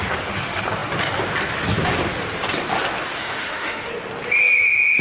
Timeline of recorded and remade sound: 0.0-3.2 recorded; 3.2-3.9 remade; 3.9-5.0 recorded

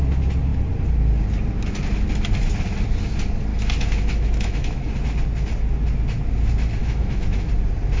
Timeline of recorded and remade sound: 0.0-3.5 recorded; 3.5-4.9 remade; 4.9-6.8 recorded; 6.8-7.5 remade; 7.5-8.0 recorded

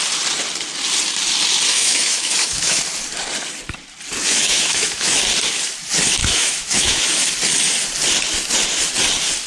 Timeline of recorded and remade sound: 0.0-1.7 recorded; 1.7-2.8 remade; 2.8-4.2 recorded; 4.2-5.2 remade; 5.2-6.2 recorded; 6.2-7.0 remade; 7.0-9.5 recorded

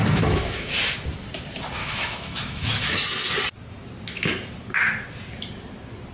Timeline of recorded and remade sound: 0.0-0.7 remade; 0.7-1.8 recorded; 1.8-3.0 remade; 3.0-6.1 recorded

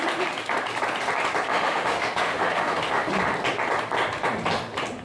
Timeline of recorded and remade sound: 0.0-1.5 recorded; 1.5-3.1 remade; 3.1-5.0 recorded

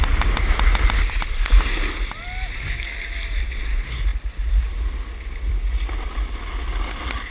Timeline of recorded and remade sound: 0.0-7.3 recorded

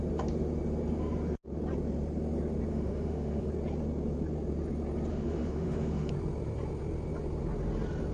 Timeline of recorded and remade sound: 0.0-2.7 recorded; 2.7-3.5 remade; 3.5-5.1 recorded; 5.1-6.1 remade; 6.1-8.1 recorded

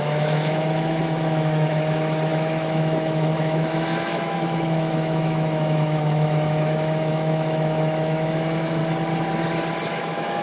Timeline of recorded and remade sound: 0.0-8.8 remade; 8.8-9.9 recorded; 9.9-10.4 remade